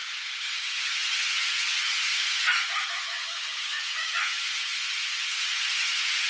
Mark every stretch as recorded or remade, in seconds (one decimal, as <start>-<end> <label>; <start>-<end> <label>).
0.0-6.3 remade